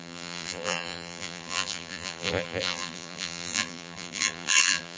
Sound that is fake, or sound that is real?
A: fake